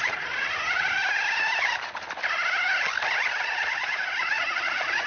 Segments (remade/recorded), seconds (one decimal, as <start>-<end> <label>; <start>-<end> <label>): 0.0-1.0 remade; 1.0-3.3 recorded; 3.3-5.1 remade